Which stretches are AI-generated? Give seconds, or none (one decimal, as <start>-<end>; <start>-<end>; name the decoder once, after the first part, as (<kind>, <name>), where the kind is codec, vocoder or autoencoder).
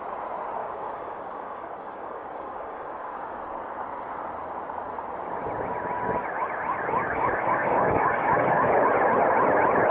0.6-3.4 (codec, DAC); 7.0-8.8